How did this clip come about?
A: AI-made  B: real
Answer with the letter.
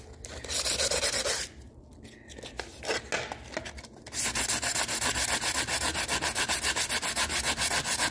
B